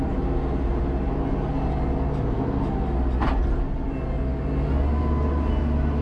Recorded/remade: recorded